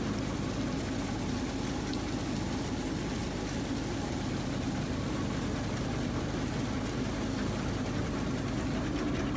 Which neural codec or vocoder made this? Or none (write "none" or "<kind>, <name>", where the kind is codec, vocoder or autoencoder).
none